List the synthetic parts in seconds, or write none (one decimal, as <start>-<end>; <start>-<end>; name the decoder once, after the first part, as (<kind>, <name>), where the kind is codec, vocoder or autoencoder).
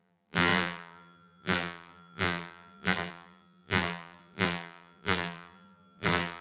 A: 0.0-6.4 (vocoder, BigVGAN v2)